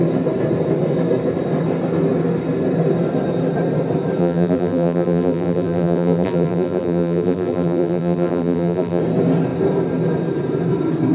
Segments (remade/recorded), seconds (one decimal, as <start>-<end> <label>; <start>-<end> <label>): 0.0-4.2 recorded; 4.2-9.0 remade; 9.0-11.1 recorded